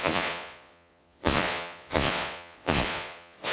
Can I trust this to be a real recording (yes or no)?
no